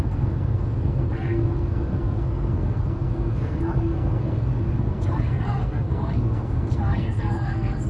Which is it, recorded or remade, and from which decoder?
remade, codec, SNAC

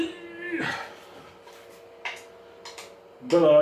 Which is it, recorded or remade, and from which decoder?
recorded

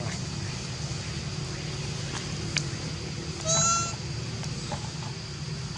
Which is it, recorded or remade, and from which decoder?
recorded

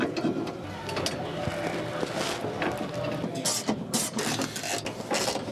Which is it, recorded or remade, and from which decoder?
recorded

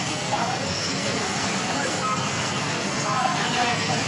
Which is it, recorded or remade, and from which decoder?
remade, codec, SNAC